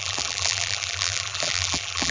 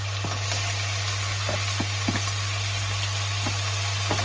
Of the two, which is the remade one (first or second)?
first